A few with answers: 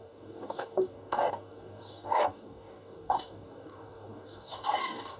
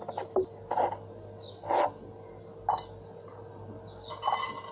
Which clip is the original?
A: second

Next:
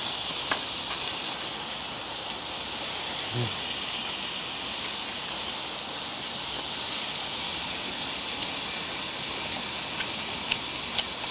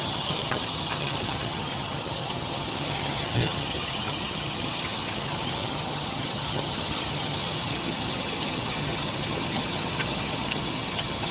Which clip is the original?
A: first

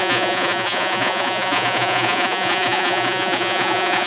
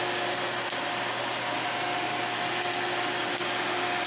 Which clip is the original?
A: second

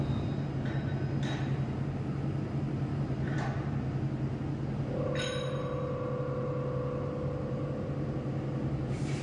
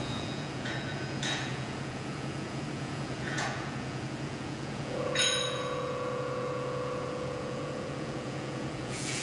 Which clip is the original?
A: first